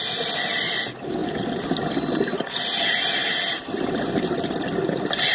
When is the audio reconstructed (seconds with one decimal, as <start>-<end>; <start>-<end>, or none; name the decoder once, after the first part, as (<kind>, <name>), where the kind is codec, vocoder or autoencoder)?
3.2-3.9 (vocoder, BigVGAN v2)